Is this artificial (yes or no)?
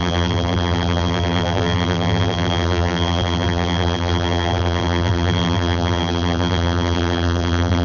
yes